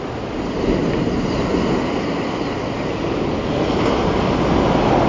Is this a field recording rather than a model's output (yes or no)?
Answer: yes